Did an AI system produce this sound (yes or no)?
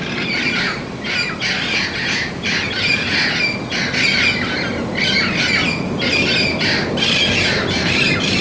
no